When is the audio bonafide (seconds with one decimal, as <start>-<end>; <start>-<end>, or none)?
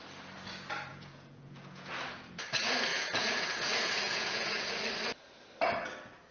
0.0-0.9; 1.9-2.9; 4.7-6.3